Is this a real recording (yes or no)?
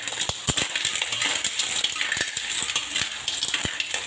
yes